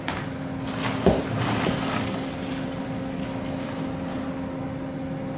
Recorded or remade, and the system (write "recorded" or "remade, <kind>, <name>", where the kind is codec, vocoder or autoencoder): recorded